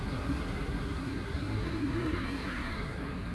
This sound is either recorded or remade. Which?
remade